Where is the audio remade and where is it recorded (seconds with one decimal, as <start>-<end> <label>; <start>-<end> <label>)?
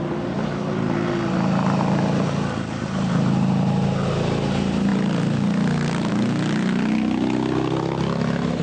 0.0-4.9 recorded; 4.9-6.1 remade; 6.1-8.6 recorded